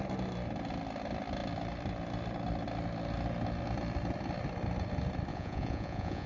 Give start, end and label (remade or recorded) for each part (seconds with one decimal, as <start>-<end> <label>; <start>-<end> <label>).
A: 0.0-5.3 recorded; 5.3-6.3 remade